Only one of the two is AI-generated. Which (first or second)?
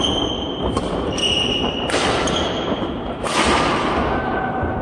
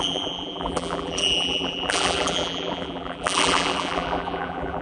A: second